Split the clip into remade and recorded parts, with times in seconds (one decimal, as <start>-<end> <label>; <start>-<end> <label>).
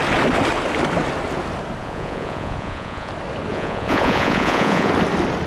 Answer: 0.0-1.8 recorded; 1.8-3.1 remade; 3.1-3.5 recorded; 3.5-4.9 remade; 4.9-5.5 recorded